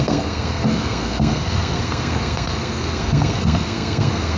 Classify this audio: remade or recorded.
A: remade